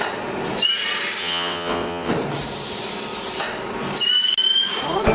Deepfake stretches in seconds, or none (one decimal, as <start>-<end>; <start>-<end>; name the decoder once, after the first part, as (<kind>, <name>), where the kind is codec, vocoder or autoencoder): 1.2-2.1 (vocoder, WaveNeXt)